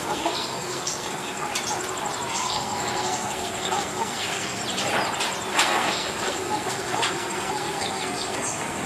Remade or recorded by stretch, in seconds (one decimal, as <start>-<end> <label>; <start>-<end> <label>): 0.0-1.5 remade; 1.5-2.3 recorded; 2.3-4.6 remade; 4.6-5.5 recorded; 5.5-8.9 remade